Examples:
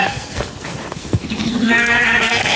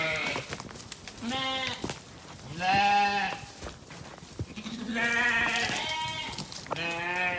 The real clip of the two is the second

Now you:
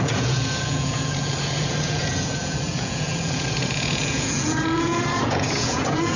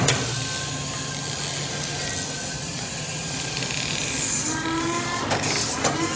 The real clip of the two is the second